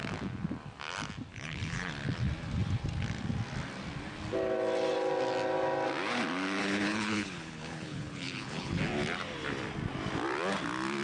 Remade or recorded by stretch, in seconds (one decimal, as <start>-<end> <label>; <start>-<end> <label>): 0.0-1.3 recorded; 1.3-1.9 remade; 1.9-6.6 recorded; 6.6-8.8 remade; 8.8-11.0 recorded